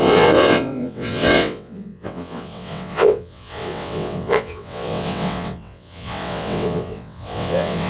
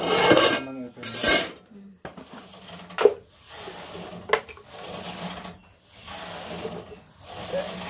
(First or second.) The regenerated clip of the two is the first